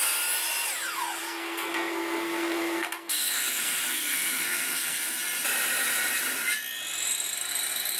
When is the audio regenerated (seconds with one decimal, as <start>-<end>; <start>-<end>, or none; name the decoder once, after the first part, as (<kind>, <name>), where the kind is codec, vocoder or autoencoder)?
1.2-5.2 (codec, SNAC)

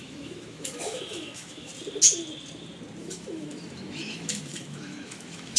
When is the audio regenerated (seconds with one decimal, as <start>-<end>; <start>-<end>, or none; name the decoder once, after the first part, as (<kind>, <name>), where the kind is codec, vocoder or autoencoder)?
0.0-1.7 (autoencoder, DAC-VAE); 3.0-5.6

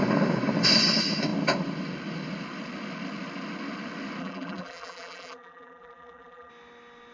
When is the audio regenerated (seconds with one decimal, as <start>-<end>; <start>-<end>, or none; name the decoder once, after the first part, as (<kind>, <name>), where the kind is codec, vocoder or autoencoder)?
4.2-6.5 (vocoder, BigVGAN v2)

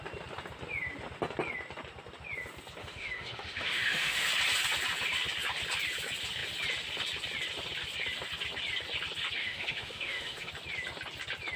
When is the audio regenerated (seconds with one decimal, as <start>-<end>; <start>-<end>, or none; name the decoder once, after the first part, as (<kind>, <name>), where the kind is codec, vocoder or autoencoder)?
2.8-4.3 (autoencoder, DAC-VAE); 9.4-10.5